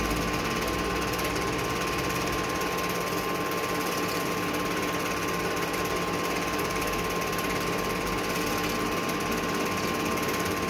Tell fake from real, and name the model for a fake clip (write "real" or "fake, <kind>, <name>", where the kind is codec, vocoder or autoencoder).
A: real